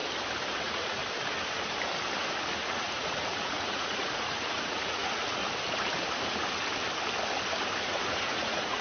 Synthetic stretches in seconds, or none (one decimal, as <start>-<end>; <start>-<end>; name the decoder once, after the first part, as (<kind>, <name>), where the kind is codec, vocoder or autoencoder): 0.6-1.0 (vocoder, Vocos); 2.6-5.4; 7.8-8.8